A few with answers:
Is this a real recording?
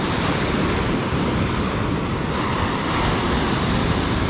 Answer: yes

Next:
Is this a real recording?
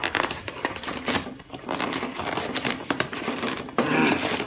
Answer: yes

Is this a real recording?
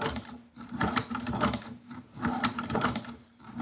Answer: no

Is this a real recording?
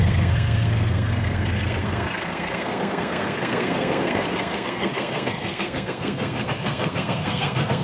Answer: no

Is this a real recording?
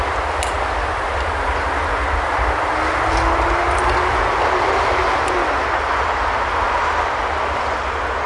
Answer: yes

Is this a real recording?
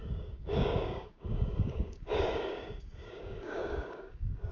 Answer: no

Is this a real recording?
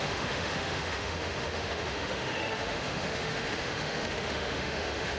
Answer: no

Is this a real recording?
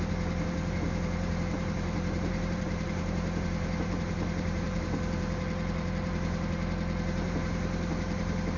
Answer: no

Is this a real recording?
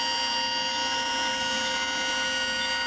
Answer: yes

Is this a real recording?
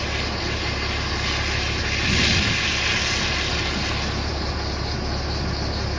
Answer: yes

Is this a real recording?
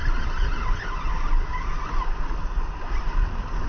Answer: yes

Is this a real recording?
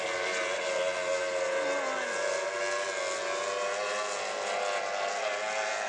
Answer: yes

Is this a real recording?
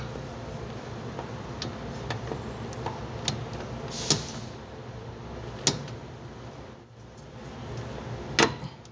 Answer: yes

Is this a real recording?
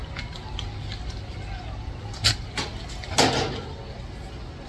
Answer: yes